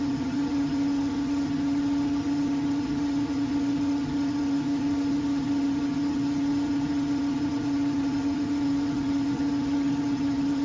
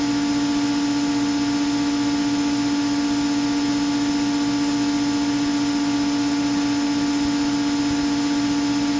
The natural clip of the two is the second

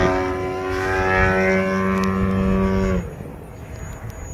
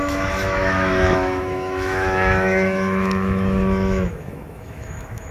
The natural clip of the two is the first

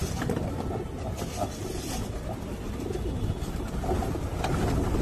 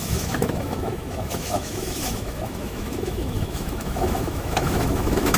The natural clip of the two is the first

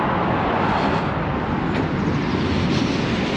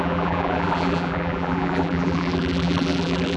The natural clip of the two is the first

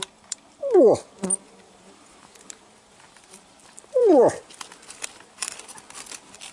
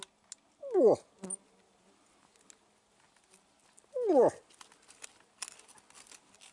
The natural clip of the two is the second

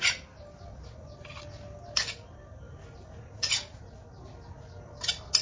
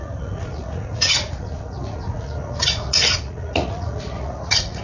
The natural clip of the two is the first